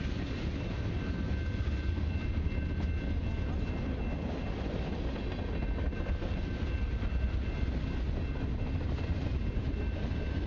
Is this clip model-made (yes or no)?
no